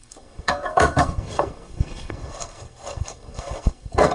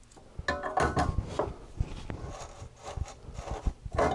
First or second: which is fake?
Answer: first